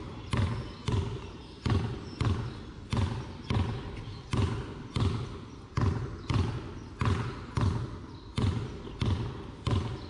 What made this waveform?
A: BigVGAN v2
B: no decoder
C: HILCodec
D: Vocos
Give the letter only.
B